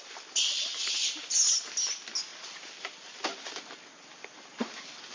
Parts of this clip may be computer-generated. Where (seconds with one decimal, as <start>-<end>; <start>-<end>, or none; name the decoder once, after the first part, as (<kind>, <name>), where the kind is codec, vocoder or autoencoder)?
none